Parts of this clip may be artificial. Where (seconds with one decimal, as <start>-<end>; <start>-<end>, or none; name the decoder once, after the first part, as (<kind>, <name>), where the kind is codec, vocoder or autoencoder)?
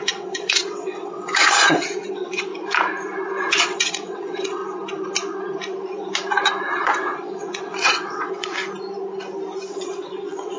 0.0-2.5 (vocoder, WaveNeXt); 3.5-4.6; 6.6-8.6; 9.7-10.6